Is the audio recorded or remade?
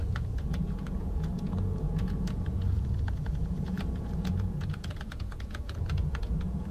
remade